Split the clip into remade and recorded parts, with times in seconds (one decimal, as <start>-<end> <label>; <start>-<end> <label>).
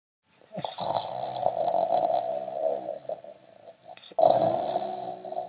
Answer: 0.0-5.5 recorded